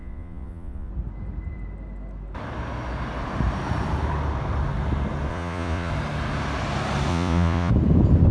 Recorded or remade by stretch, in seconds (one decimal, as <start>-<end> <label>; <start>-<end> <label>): 0.0-0.9 remade; 0.9-5.3 recorded; 5.3-5.9 remade; 5.9-7.1 recorded; 7.1-7.7 remade; 7.7-8.3 recorded